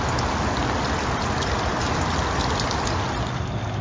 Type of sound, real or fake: real